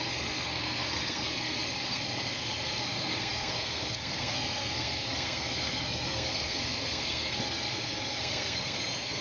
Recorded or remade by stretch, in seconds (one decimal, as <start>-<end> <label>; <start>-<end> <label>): 0.0-9.2 remade